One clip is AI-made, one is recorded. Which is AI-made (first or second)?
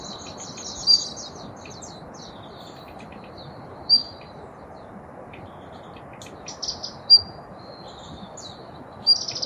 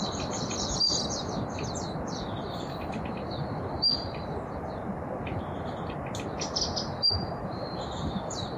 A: second